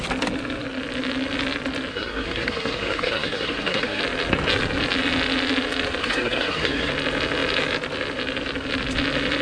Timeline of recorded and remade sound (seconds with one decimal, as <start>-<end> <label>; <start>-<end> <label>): 0.0-1.9 recorded; 1.9-4.0 remade; 4.0-6.0 recorded; 6.0-6.9 remade; 6.9-9.4 recorded